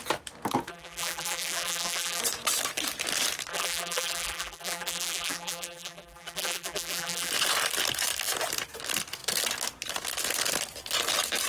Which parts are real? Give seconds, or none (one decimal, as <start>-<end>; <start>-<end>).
0.0-0.7; 2.2-3.5; 7.3-11.5